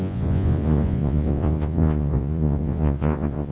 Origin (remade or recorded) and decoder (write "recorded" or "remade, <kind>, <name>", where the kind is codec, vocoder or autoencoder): remade, vocoder, Vocos